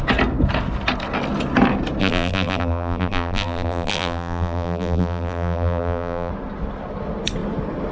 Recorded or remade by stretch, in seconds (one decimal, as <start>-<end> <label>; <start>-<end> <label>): 0.0-2.0 recorded; 2.0-6.3 remade; 6.3-7.9 recorded